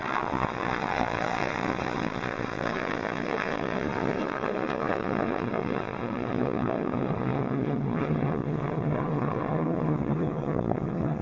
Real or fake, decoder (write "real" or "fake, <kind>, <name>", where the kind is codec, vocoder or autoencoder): fake, vocoder, Vocos